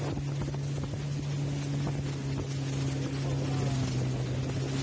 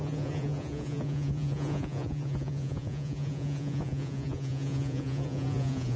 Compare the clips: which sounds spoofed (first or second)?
second